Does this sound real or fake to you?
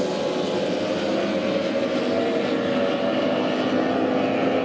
real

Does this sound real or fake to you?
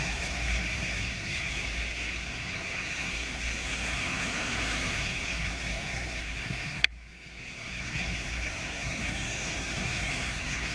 fake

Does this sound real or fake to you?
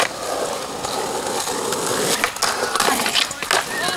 real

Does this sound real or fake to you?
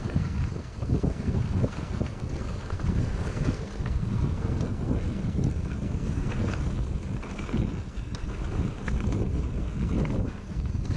fake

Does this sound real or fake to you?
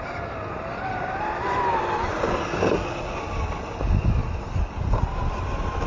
real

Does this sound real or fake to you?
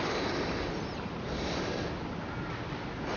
real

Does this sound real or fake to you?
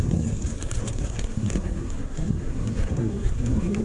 fake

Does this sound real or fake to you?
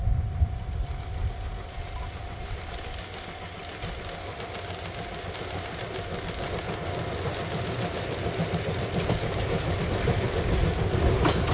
real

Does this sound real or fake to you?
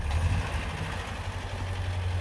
real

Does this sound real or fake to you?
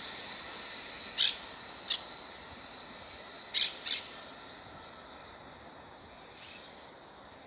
real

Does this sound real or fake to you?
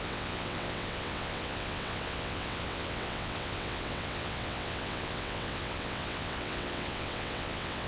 fake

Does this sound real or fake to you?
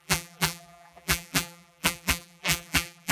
fake